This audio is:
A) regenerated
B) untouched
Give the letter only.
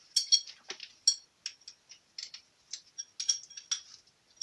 B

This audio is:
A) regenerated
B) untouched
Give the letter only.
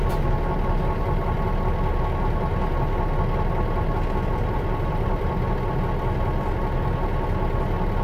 B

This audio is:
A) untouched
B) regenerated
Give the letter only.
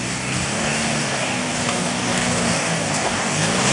B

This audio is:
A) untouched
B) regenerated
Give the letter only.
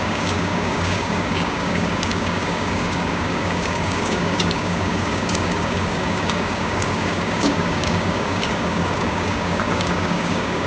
B